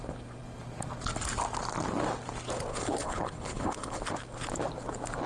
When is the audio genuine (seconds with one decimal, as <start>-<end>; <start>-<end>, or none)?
0.0-2.7; 4.0-5.3